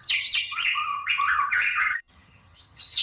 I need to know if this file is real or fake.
fake